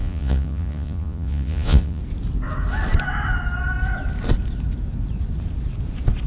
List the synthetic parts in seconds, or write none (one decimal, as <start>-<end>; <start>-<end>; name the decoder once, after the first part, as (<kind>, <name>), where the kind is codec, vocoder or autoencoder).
0.0-2.0 (vocoder, Vocos)